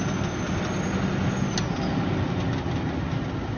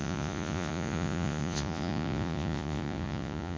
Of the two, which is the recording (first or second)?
first